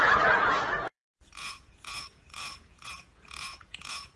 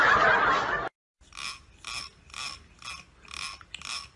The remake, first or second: first